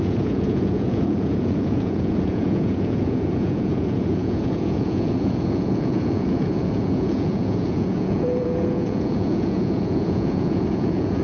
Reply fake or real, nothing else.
fake